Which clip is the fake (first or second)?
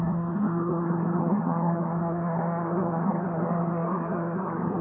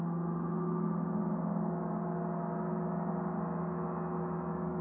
first